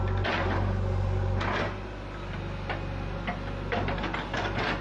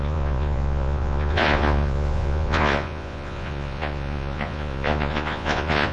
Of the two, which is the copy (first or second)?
second